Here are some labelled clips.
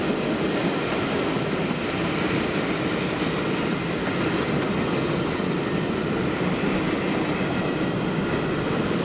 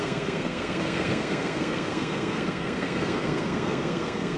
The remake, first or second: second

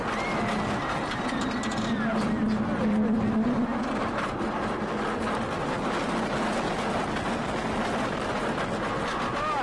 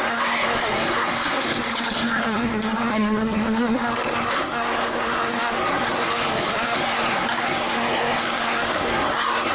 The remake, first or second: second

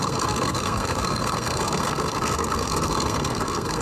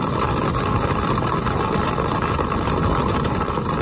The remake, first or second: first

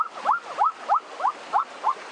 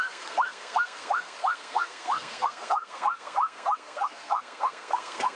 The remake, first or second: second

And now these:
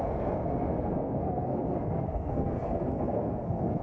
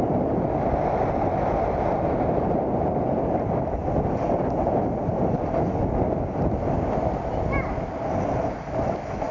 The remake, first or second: first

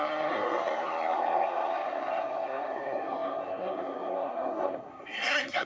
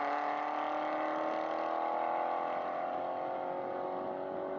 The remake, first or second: first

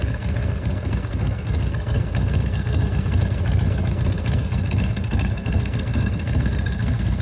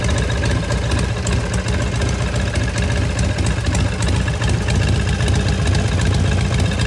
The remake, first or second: first